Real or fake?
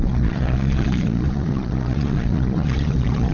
fake